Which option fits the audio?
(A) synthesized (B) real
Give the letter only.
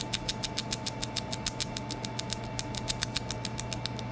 B